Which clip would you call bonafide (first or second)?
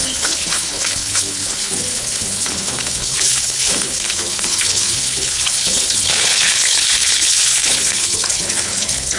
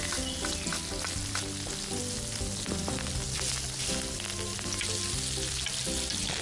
second